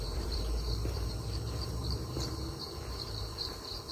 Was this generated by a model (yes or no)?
yes